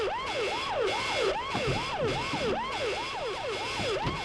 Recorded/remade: recorded